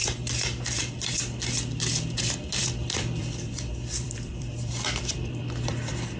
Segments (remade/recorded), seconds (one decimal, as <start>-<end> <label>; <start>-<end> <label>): 0.0-2.3 recorded; 2.3-6.2 remade